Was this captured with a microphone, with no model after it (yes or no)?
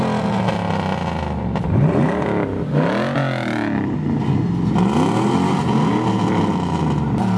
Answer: yes